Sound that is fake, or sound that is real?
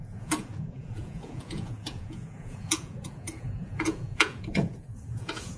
fake